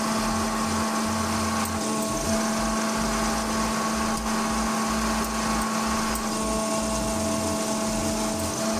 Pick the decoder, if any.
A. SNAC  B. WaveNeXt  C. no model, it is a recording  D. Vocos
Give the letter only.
C